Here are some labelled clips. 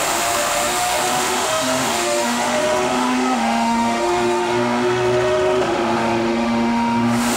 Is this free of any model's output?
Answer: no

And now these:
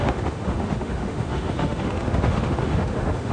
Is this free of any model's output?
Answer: no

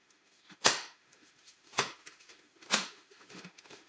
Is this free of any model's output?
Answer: no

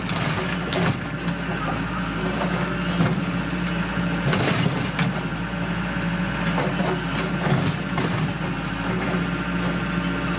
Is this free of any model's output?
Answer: yes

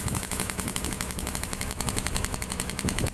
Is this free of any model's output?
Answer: no